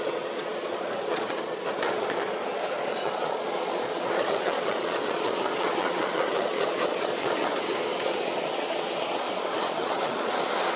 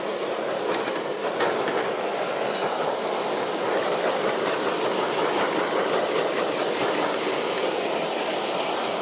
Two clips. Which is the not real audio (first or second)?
first